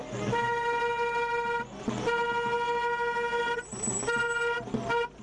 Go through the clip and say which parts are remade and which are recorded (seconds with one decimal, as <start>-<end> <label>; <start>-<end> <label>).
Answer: 0.0-5.2 recorded